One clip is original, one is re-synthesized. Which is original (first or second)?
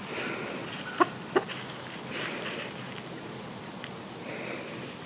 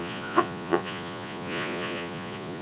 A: first